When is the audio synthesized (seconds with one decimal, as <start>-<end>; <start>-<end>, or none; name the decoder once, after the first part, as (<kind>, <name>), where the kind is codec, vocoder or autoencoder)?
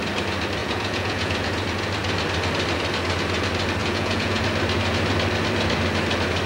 0.6-1.5 (vocoder, Vocos); 3.8-4.4